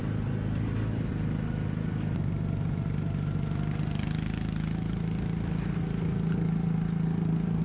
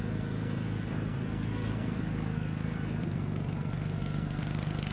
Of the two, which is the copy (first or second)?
second